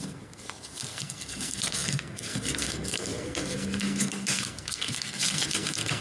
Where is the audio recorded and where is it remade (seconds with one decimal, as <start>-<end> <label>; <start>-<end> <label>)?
0.0-6.0 remade